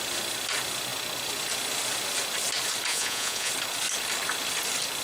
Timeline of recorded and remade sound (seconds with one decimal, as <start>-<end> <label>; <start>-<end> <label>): 0.0-2.9 recorded; 2.9-3.5 remade; 3.5-5.0 recorded